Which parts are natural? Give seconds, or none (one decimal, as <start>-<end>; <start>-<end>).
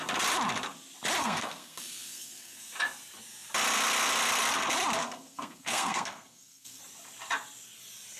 0.0-1.2; 2.6-5.0; 6.8-8.2